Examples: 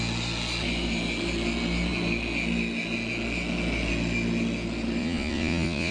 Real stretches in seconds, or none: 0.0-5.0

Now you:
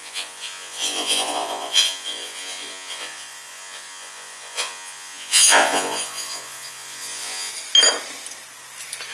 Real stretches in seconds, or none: 7.5-9.1

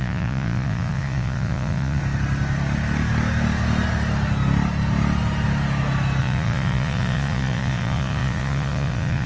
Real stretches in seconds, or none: 2.0-6.2